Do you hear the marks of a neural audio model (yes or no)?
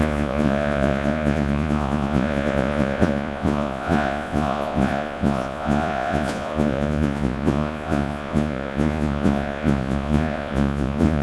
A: yes